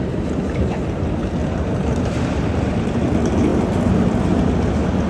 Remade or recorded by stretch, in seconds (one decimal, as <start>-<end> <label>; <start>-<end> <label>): 0.0-1.4 recorded; 1.4-2.9 remade; 2.9-5.1 recorded